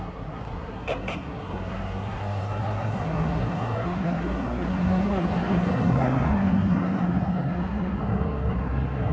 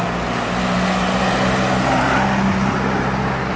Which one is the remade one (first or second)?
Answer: first